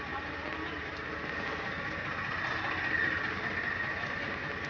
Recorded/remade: recorded